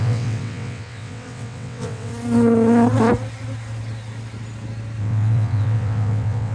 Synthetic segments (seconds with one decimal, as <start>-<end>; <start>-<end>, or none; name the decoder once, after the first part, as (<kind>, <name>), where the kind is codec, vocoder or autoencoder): 0.0-2.1 (vocoder, WaveNeXt); 5.0-6.5